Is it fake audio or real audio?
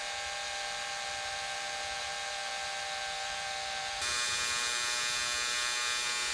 real